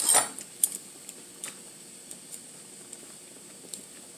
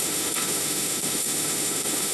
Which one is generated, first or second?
second